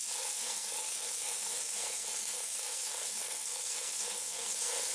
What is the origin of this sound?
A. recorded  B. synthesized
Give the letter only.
B